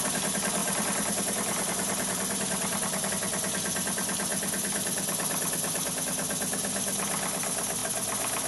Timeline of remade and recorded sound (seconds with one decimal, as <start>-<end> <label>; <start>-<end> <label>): 0.0-0.6 recorded; 0.6-3.1 remade; 3.1-8.5 recorded